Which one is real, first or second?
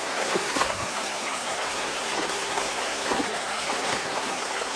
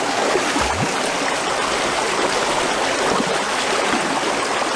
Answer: second